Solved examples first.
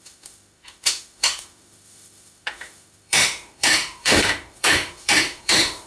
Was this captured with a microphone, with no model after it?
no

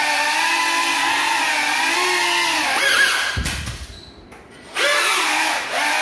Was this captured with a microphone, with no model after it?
yes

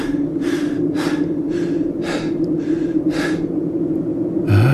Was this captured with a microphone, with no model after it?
yes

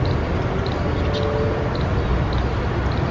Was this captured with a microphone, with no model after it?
yes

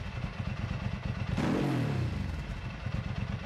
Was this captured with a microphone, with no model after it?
yes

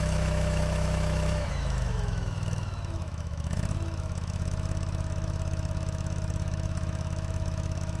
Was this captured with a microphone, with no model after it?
no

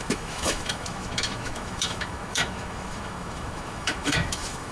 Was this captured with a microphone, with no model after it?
no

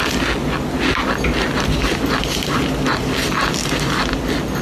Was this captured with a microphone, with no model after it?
yes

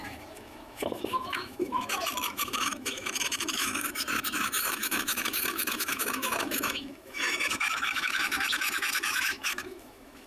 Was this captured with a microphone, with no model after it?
no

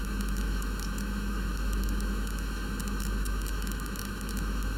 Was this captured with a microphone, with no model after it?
no